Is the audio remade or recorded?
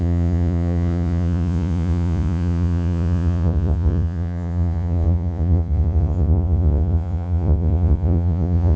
remade